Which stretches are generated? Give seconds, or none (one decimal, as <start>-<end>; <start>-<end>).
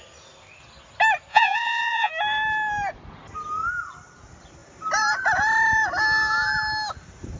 1.3-2.1